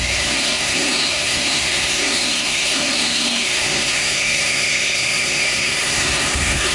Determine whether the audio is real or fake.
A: fake